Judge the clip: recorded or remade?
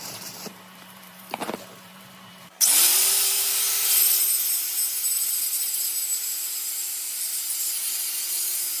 remade